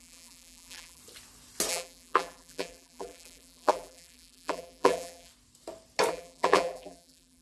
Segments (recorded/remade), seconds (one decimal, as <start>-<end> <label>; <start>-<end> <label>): 0.0-1.0 remade; 1.0-1.7 recorded; 1.7-5.3 remade; 5.3-6.1 recorded; 6.1-7.4 remade